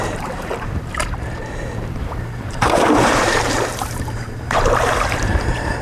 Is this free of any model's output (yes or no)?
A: no